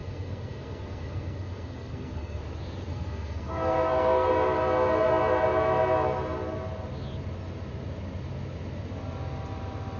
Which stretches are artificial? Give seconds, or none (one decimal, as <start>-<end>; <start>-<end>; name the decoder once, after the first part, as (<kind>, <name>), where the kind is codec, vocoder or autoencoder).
0.0-2.4 (codec, SNAC); 2.9-4.3